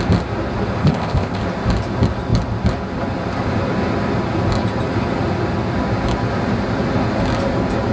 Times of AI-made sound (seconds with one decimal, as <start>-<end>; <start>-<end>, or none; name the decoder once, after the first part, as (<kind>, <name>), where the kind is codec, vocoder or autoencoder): 0.8-1.4 (codec, ZipCodec)